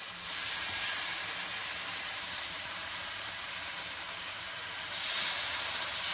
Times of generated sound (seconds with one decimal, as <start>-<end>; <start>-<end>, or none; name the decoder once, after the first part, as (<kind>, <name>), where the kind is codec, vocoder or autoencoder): 1.6-5.3 (vocoder, BigVGAN v2)